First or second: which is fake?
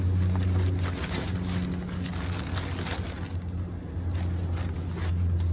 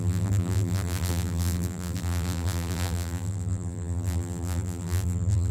second